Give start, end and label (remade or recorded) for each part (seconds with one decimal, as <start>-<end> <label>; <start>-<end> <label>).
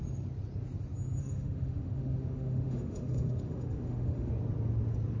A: 0.0-1.2 recorded; 1.2-4.3 remade; 4.3-5.2 recorded